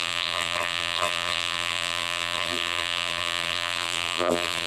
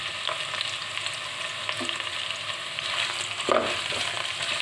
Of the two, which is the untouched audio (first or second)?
second